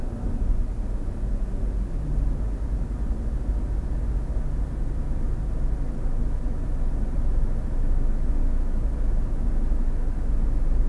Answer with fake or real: real